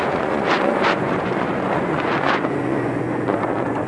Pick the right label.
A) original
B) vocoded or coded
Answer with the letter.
B